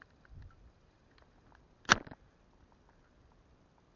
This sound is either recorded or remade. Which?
recorded